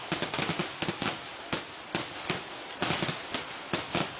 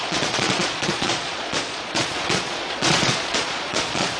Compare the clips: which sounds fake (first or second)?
second